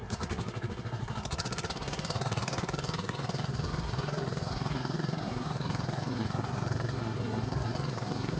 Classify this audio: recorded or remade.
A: remade